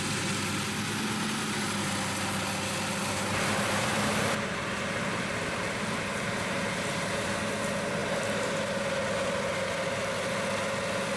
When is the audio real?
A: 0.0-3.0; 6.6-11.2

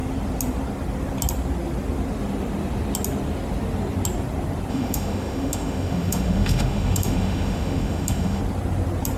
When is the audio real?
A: 0.0-4.7; 8.4-9.2

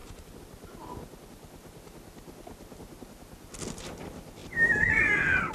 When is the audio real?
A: 0.0-5.5